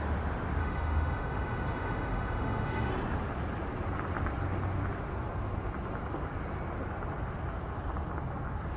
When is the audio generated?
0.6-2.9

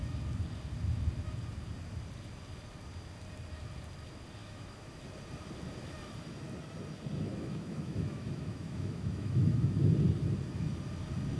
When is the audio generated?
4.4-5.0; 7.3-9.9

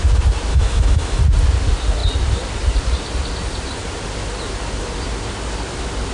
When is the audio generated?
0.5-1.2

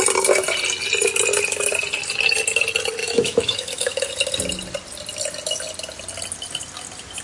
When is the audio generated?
3.0-4.1

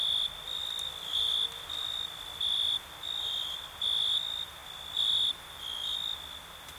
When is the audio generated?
none